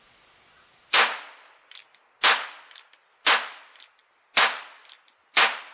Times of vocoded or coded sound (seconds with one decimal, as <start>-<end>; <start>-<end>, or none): none